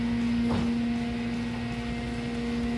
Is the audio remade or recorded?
recorded